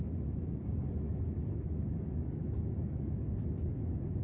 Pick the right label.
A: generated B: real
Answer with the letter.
A